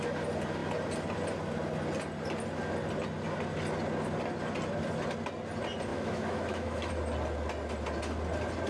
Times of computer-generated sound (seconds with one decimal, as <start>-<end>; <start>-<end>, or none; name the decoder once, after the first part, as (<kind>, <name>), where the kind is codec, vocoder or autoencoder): 5.9-6.9 (autoencoder, DAC-VAE)